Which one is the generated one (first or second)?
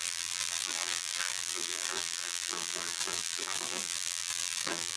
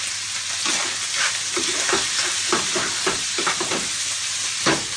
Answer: first